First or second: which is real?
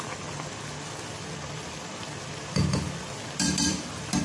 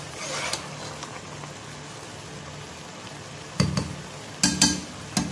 second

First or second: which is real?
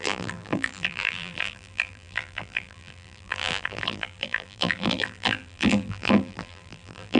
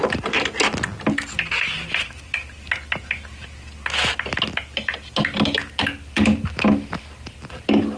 second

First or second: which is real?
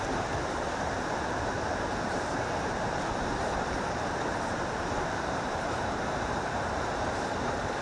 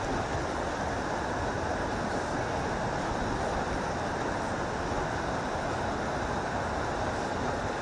second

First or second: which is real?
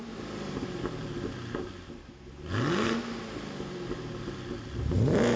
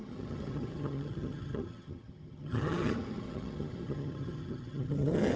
first